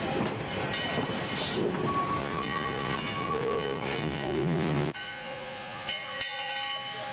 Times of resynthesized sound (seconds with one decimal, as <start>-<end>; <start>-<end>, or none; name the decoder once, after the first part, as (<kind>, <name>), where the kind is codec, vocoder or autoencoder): 2.2-6.5 (vocoder, Vocos)